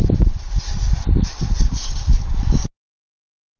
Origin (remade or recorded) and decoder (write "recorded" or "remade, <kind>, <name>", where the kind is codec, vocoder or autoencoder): recorded